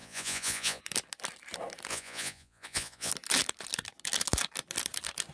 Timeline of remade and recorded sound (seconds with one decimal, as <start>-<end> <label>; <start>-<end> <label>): 0.0-0.8 remade; 0.8-1.9 recorded; 1.9-3.1 remade; 3.1-5.3 recorded